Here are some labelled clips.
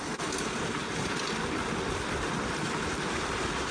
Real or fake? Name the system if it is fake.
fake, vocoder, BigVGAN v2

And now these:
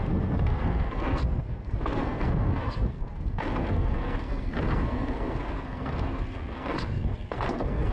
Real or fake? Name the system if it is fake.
fake, codec, SNAC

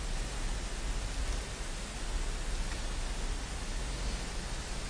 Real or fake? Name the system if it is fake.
real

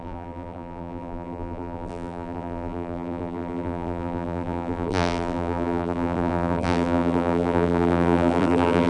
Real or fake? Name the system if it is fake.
fake, vocoder, BigVGAN v2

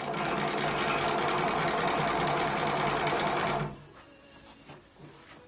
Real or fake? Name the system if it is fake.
real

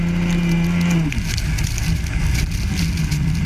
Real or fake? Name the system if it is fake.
real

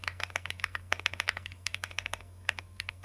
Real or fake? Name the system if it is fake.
fake, codec, SNAC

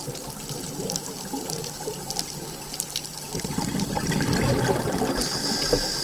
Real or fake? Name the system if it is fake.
real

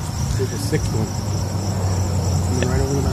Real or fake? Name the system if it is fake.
real